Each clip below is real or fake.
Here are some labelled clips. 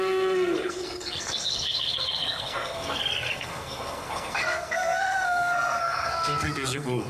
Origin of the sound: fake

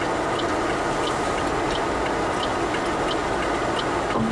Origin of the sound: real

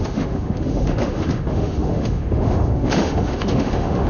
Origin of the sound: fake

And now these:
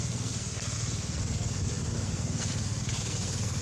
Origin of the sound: fake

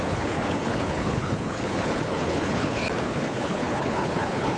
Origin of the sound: fake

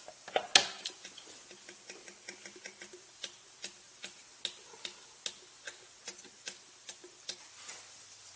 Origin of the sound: real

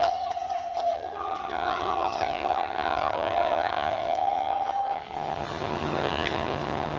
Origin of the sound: fake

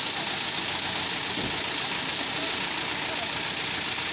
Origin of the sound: real